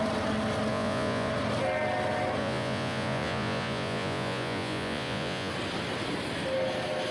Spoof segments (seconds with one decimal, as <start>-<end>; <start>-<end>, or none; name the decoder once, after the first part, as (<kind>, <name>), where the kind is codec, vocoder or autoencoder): 0.7-1.3 (vocoder, Vocos); 2.4-5.5